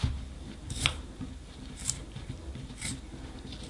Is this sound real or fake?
fake